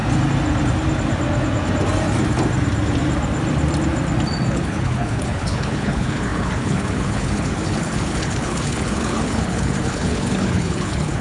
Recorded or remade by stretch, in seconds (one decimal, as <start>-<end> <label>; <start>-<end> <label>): 0.0-4.5 recorded; 4.5-11.2 remade